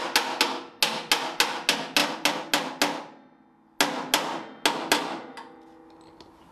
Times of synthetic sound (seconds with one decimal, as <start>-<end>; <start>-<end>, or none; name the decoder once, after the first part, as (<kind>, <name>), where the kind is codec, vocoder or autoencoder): none